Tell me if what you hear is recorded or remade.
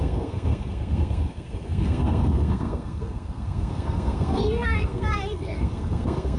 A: remade